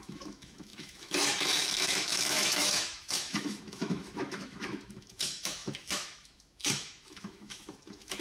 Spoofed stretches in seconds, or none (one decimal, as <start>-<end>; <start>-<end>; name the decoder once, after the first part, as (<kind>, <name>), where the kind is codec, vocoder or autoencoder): 0.0-8.2 (autoencoder, DAC-VAE)